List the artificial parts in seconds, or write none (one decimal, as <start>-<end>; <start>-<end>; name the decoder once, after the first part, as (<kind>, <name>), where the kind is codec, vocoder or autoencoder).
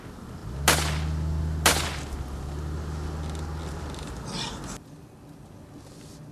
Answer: none